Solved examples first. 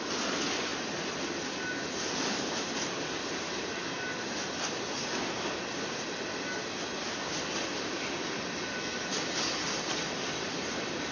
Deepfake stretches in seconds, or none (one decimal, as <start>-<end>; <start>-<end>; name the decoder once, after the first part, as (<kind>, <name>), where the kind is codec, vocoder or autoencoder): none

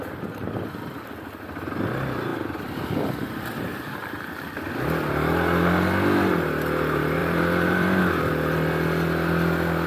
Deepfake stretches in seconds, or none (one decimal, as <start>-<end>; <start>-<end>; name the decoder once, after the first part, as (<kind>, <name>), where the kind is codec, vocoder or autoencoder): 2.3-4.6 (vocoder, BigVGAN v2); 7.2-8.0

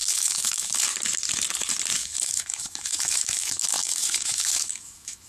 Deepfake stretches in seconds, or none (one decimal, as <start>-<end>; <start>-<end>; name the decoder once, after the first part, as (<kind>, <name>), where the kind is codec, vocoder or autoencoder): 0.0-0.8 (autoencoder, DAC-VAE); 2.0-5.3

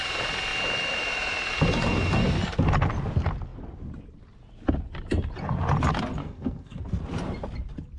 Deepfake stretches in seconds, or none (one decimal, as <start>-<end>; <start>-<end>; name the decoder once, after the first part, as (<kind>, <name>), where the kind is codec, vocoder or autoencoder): 6.2-6.8 (codec, SNAC)

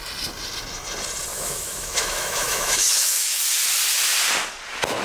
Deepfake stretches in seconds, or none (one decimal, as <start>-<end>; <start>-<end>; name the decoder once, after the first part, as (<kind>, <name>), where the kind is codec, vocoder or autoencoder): 1.3-3.4 (autoencoder, DAC-VAE)